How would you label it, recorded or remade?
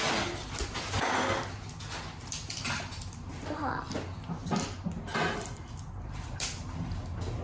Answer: recorded